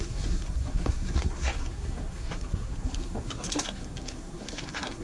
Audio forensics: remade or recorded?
remade